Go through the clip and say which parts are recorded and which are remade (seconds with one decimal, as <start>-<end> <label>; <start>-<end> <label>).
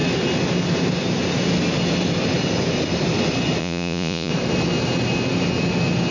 0.0-3.6 recorded; 3.6-4.3 remade; 4.3-6.1 recorded